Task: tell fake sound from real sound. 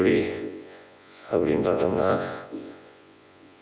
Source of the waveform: fake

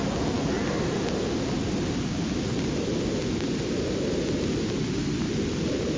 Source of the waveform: real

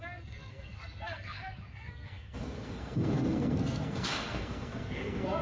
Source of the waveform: fake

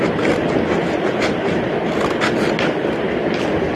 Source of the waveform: real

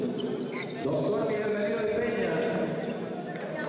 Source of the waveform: real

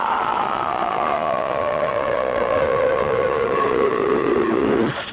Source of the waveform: fake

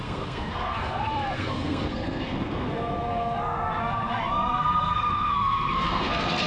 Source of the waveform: fake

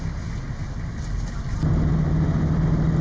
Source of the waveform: real